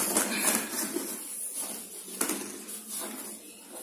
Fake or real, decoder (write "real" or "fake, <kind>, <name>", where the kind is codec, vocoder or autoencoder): real